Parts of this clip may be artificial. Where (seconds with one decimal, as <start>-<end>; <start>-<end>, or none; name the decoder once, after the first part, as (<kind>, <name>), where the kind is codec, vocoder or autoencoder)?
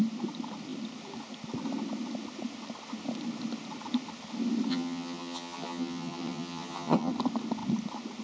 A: 4.7-7.1 (vocoder, HiFi-GAN)